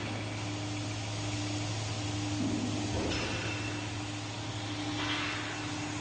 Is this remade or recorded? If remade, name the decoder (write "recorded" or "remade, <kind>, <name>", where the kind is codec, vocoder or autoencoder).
recorded